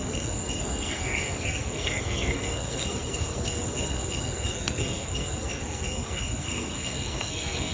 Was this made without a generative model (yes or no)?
no